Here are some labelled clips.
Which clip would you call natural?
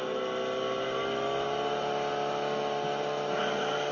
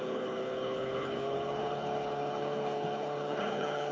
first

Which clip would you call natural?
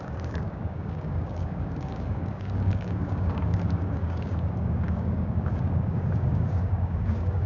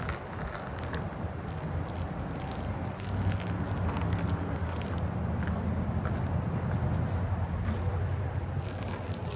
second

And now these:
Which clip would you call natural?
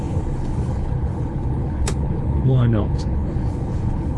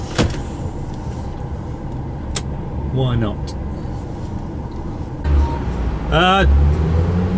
second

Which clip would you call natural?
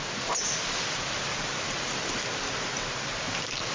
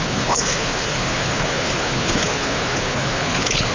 first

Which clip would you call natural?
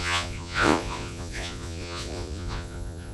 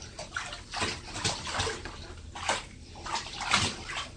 second